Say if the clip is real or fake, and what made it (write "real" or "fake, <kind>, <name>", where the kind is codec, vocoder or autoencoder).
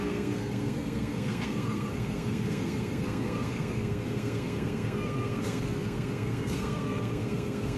fake, codec, SNAC